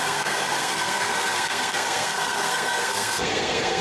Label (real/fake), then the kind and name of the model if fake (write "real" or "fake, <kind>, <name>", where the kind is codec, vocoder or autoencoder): fake, codec, SNAC